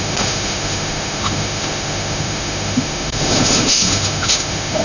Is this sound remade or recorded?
remade